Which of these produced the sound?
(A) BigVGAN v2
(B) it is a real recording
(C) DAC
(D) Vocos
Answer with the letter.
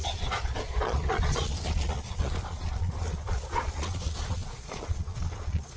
D